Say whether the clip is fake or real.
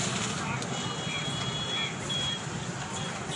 real